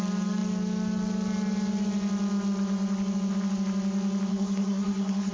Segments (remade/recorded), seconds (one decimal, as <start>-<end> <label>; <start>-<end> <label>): 0.0-4.3 recorded; 4.3-5.3 remade